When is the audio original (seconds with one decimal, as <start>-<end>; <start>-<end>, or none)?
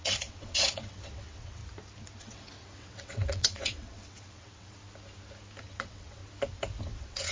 1.6-2.2; 4.8-5.6; 6.2-6.8